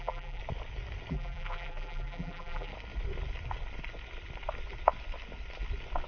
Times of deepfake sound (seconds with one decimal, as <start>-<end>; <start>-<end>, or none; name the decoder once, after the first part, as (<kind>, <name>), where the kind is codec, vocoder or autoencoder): 0.0-0.4 (vocoder, BigVGAN v2); 1.1-2.7